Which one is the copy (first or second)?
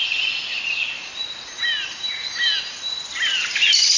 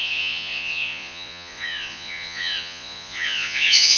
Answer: second